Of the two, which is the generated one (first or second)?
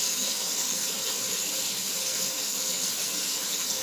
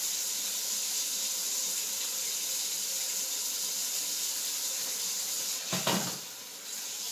first